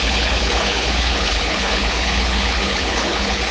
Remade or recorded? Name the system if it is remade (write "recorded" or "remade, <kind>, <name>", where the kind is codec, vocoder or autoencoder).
remade, codec, HILCodec